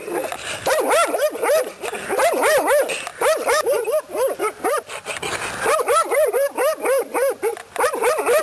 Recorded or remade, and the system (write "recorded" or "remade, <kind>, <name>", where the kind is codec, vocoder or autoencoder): remade, vocoder, BigVGAN v2